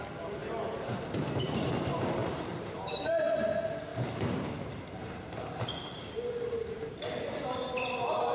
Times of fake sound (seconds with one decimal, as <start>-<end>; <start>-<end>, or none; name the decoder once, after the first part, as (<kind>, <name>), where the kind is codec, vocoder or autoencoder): 0.4-1.4 (vocoder, BigVGAN v2); 2.2-3.5; 3.9-6.9